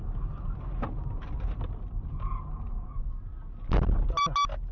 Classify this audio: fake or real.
real